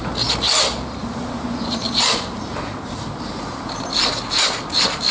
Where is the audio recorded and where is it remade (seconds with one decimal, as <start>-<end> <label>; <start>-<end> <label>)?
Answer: 0.0-1.0 recorded; 1.0-3.8 remade; 3.8-5.1 recorded